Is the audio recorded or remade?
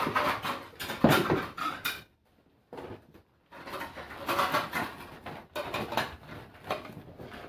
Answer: remade